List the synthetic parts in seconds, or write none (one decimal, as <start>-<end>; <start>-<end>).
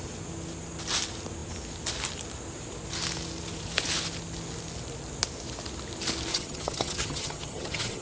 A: 6.3-8.0